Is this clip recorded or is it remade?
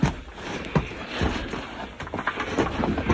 recorded